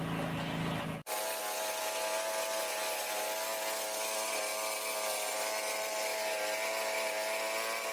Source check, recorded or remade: recorded